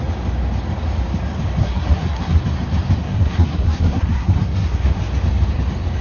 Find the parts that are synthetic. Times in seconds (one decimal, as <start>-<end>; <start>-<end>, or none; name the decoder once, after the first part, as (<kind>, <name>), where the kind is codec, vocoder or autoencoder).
1.6-2.4 (codec, SNAC); 3.0-5.0